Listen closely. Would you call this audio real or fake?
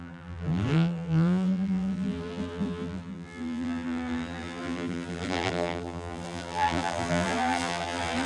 fake